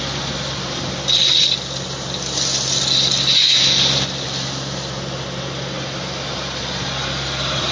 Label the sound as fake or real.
real